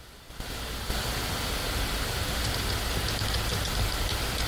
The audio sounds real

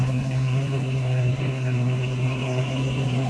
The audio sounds fake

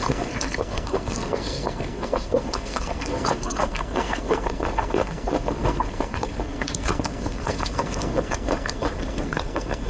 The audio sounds fake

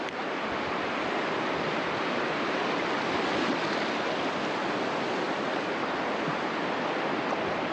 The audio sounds real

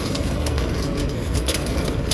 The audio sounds fake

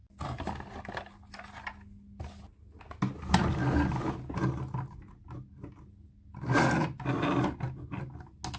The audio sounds real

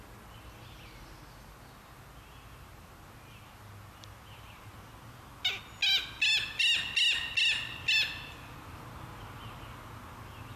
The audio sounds real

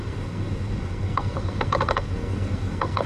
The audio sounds fake